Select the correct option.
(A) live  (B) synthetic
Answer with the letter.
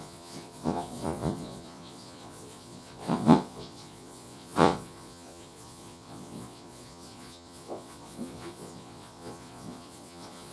B